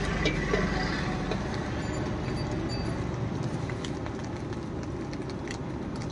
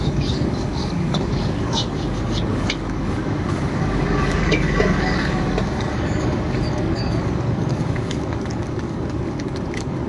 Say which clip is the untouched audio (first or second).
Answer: first